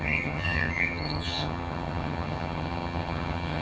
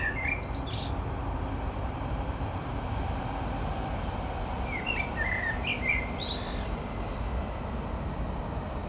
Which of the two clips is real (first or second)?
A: second